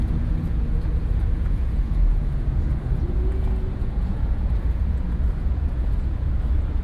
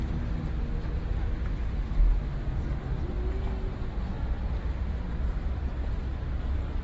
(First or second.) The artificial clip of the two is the first